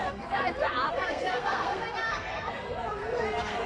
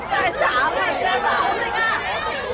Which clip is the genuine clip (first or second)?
second